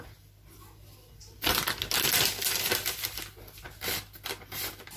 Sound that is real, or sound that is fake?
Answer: real